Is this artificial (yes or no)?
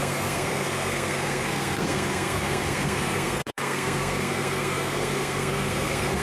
yes